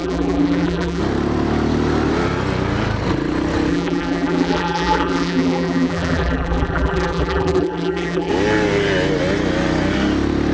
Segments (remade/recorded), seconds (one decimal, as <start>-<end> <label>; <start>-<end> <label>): 0.0-1.0 remade; 1.0-3.7 recorded; 3.7-8.3 remade; 8.3-10.5 recorded